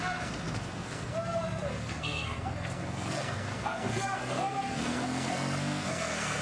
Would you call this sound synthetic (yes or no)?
yes